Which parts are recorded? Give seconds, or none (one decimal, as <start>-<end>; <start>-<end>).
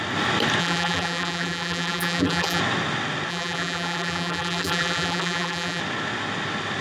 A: 0.0-0.6; 2.6-3.3; 5.8-6.8